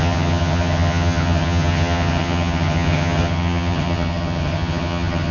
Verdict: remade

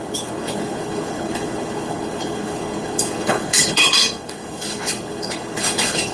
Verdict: remade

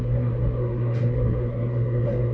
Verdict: remade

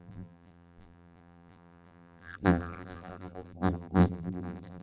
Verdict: remade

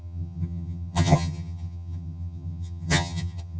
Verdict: remade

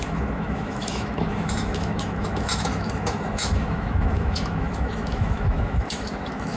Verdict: remade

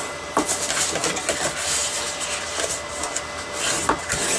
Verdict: recorded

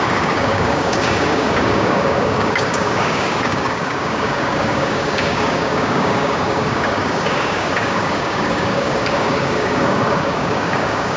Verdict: remade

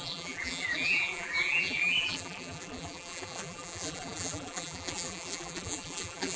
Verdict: remade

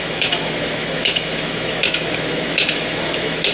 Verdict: remade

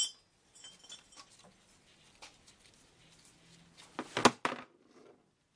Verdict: recorded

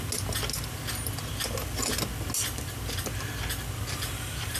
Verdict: recorded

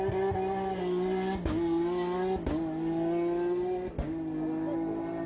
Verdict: recorded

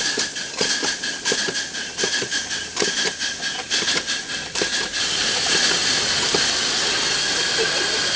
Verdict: recorded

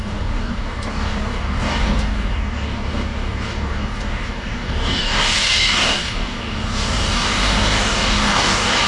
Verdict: remade